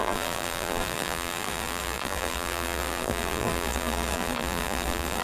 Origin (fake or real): fake